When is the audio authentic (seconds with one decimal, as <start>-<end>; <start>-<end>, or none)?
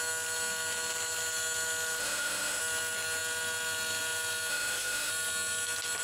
0.0-2.0; 2.6-4.5; 5.1-6.0